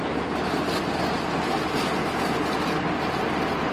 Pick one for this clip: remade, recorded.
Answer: recorded